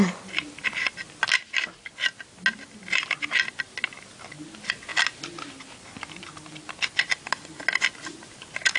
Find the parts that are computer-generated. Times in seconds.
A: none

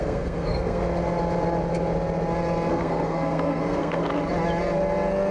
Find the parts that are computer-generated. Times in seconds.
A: 0.0-0.8 (codec, SNAC); 2.7-4.1

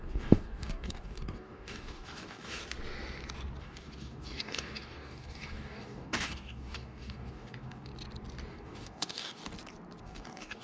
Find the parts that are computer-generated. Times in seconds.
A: 0.0-2.6 (codec, DAC); 3.6-7.9; 8.5-9.4; 10.0-10.6